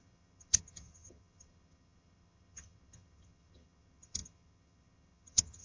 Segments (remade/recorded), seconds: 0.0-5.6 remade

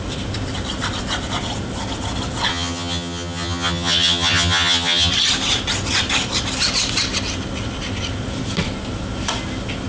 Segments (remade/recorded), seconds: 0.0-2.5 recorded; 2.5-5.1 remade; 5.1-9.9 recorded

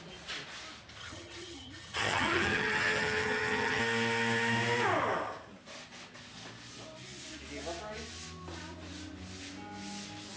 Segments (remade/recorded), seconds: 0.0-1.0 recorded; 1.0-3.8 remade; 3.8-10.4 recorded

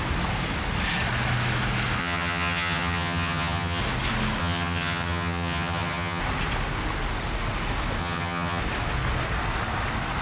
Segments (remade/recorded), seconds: 0.0-2.0 recorded; 2.0-3.8 remade; 3.8-4.4 recorded; 4.4-6.2 remade; 6.2-8.0 recorded; 8.0-8.6 remade; 8.6-10.2 recorded

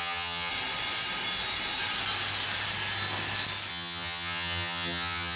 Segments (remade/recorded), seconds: 0.0-0.5 remade; 0.5-3.7 recorded; 3.7-5.4 remade